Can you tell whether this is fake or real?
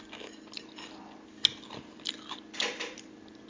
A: real